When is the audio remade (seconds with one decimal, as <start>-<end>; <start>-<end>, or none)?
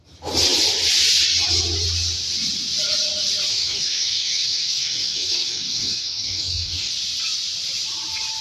3.5-6.9